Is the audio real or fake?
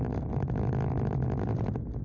real